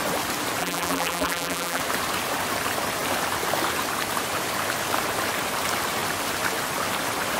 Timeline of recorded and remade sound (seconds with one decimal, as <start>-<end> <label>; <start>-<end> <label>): 0.0-0.6 recorded; 0.6-1.8 remade; 1.8-7.4 recorded